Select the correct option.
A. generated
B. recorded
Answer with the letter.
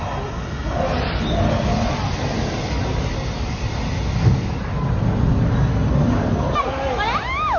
B